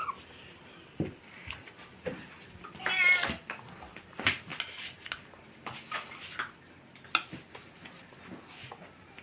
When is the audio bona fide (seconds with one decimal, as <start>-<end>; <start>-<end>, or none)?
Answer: 0.0-9.2